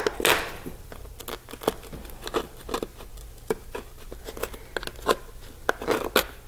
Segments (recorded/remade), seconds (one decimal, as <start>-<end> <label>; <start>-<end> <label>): 0.0-6.5 recorded

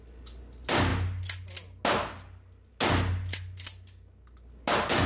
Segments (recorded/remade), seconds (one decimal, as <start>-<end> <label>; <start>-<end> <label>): 0.0-5.1 recorded

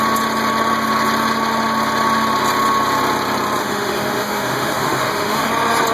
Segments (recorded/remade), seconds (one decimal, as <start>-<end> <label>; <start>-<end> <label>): 0.0-3.6 recorded; 3.6-5.5 remade; 5.5-5.9 recorded